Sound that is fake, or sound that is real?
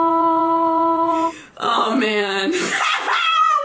fake